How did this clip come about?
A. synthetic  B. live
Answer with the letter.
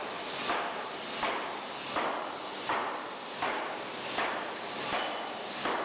A